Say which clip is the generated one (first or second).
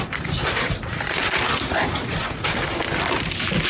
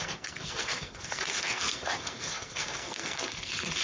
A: second